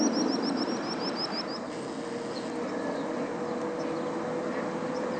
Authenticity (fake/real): real